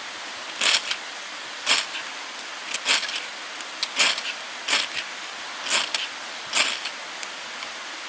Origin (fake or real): real